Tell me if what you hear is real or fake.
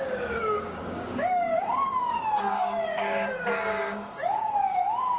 fake